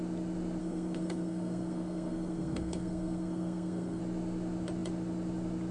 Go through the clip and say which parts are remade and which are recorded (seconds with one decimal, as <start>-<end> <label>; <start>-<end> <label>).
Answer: 0.0-0.6 recorded; 0.6-4.0 remade; 4.0-5.7 recorded

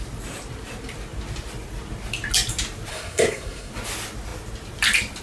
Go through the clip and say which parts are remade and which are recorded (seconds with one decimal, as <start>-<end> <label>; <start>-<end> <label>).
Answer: 0.0-2.9 recorded; 2.9-3.7 remade; 3.7-5.2 recorded

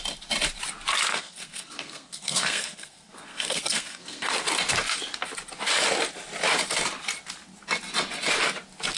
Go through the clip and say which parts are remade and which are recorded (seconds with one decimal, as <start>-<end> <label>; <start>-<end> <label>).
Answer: 0.0-1.1 recorded; 1.1-4.3 remade; 4.3-9.0 recorded

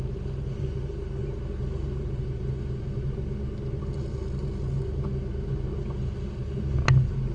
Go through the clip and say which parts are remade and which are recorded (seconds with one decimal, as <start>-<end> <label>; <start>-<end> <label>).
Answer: 0.0-7.3 recorded

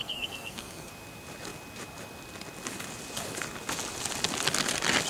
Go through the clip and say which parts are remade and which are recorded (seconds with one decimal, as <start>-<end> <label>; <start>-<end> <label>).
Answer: 0.0-0.9 remade; 0.9-5.1 recorded

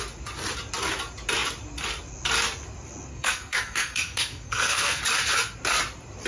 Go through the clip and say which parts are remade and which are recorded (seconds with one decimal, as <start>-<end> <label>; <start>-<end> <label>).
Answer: 0.0-3.1 recorded; 3.1-5.0 remade; 5.0-6.3 recorded